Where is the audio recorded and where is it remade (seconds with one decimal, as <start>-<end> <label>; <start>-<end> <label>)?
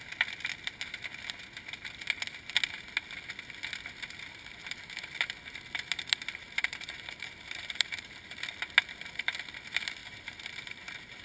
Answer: 0.0-6.4 recorded; 6.4-8.2 remade; 8.2-10.0 recorded; 10.0-11.2 remade